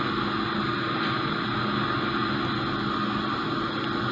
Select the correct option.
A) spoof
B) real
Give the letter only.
B